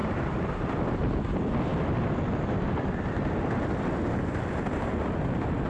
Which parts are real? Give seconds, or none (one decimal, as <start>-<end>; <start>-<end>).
0.9-5.7